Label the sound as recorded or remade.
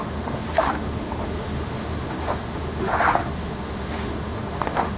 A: remade